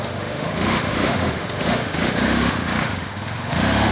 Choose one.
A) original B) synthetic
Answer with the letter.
B